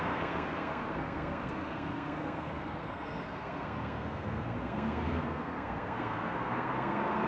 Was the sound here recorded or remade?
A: remade